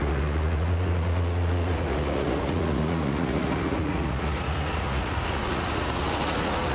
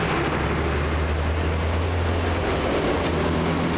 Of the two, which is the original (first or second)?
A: second